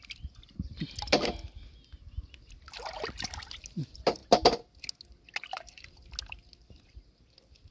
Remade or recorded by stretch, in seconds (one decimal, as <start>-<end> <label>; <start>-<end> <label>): 0.0-7.7 recorded